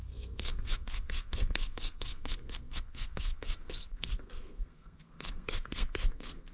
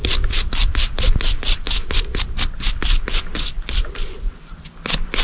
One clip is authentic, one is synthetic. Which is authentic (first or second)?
second